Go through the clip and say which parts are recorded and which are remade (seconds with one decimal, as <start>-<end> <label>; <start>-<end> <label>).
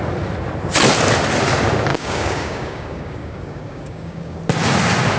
0.0-1.9 recorded; 1.9-4.4 remade; 4.4-5.2 recorded